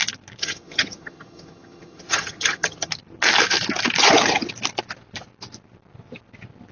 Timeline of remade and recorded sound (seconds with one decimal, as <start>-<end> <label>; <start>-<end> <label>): 0.0-0.4 recorded; 0.4-2.9 remade; 2.9-4.0 recorded; 4.0-4.5 remade; 4.5-6.7 recorded